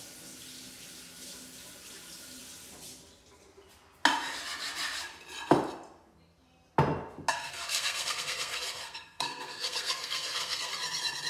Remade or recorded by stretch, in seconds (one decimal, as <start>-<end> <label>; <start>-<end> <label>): 0.0-7.3 recorded; 7.3-10.7 remade; 10.7-11.3 recorded